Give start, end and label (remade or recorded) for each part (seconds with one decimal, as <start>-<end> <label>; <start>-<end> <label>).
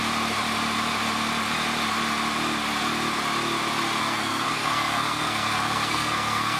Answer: 0.0-4.0 recorded; 4.0-6.6 remade